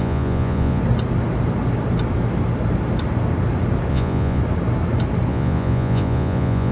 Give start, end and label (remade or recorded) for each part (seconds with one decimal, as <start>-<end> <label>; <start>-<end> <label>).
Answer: 0.0-0.8 remade; 0.8-3.9 recorded; 3.9-4.4 remade; 4.4-5.3 recorded; 5.3-6.7 remade